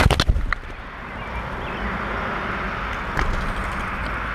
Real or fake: real